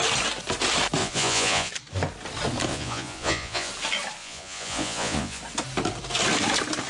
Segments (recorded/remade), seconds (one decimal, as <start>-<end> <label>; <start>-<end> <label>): 0.0-1.0 recorded; 1.0-1.7 remade; 1.7-2.7 recorded; 2.7-3.7 remade; 3.7-4.2 recorded; 4.2-5.4 remade; 5.4-6.9 recorded